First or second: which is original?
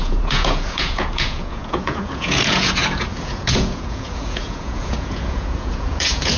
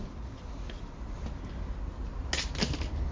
second